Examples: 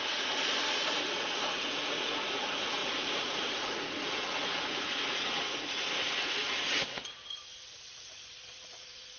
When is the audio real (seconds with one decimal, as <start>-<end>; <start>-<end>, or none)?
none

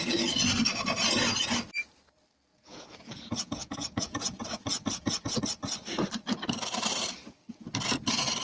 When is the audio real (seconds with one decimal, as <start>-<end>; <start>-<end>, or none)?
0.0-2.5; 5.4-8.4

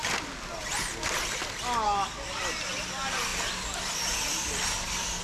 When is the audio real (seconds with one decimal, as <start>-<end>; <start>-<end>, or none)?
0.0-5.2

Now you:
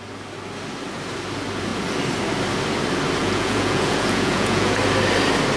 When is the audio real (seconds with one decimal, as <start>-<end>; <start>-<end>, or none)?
0.0-3.2; 4.8-5.6